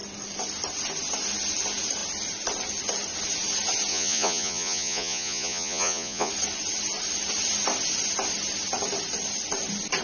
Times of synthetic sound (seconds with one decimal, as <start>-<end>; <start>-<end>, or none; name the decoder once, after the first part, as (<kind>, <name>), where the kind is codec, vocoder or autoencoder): 3.9-6.3 (vocoder, Vocos)